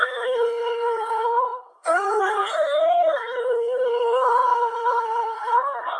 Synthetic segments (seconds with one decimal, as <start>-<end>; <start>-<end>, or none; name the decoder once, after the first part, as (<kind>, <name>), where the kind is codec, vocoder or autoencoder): 0.0-6.0 (codec, SNAC)